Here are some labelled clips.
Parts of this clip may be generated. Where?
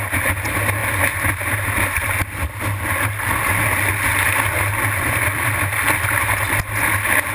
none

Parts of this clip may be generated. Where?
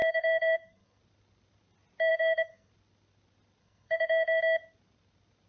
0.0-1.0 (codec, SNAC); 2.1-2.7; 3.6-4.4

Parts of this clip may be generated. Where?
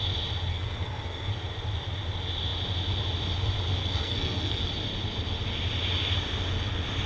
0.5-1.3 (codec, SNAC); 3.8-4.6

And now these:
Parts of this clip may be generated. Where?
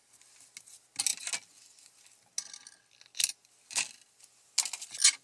none